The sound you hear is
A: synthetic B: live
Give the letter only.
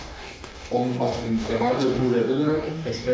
A